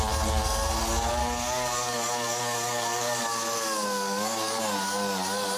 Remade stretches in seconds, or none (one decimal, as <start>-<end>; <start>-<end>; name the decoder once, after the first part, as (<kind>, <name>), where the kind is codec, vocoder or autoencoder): 1.2-4.6 (codec, DAC)